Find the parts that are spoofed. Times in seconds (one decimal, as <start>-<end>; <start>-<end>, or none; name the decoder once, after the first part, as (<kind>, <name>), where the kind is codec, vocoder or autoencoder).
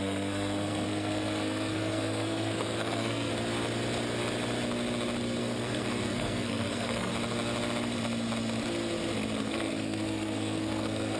0.0-3.3 (codec, SNAC); 5.4-7.1; 9.4-11.2